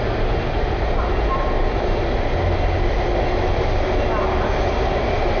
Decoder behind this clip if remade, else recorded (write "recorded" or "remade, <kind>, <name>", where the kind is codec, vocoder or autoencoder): recorded